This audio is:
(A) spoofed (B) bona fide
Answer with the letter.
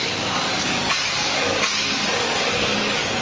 A